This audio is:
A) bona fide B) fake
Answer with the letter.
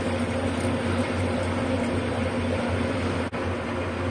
A